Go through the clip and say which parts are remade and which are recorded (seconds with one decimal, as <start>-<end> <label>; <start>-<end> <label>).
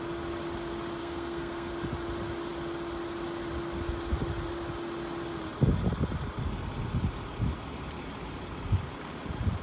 0.0-1.0 recorded; 1.0-1.7 remade; 1.7-9.6 recorded